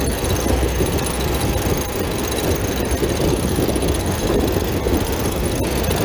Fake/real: real